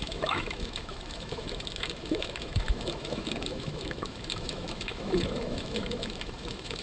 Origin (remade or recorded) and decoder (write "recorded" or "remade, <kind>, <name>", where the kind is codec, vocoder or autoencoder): remade, autoencoder, DAC-VAE